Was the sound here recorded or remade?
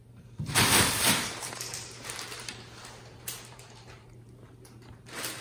remade